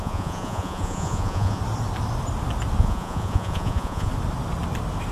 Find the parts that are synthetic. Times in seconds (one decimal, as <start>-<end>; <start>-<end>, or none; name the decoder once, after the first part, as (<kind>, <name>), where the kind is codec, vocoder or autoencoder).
0.0-1.6 (vocoder, Vocos); 2.8-4.1